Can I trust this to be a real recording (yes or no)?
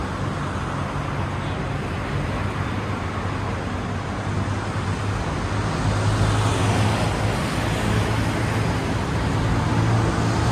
yes